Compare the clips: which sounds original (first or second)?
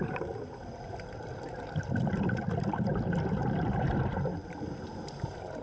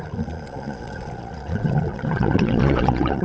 first